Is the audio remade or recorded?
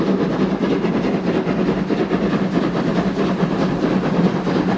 recorded